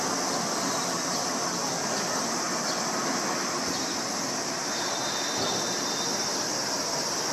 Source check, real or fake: real